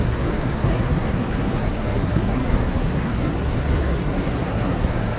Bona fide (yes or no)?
no